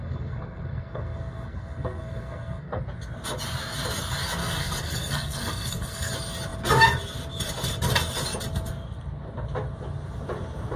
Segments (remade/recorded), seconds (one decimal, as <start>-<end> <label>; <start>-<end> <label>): 0.0-2.8 remade; 2.8-4.4 recorded; 4.4-6.1 remade; 6.1-10.8 recorded